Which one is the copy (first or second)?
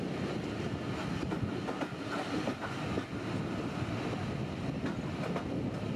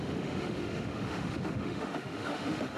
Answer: second